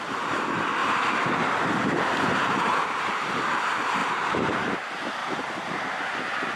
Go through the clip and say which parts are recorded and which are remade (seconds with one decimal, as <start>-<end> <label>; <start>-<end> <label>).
0.0-0.8 recorded; 0.8-3.4 remade; 3.4-4.0 recorded; 4.0-4.7 remade; 4.7-5.2 recorded; 5.2-6.0 remade; 6.0-6.6 recorded